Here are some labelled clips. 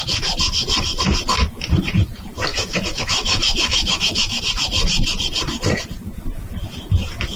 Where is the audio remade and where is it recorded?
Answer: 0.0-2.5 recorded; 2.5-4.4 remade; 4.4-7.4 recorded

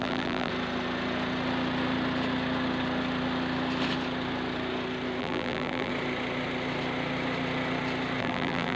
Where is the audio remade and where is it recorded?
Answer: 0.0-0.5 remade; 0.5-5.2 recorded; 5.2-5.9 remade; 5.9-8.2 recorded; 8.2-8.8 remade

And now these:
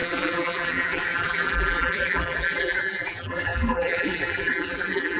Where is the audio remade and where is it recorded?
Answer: 0.0-5.2 remade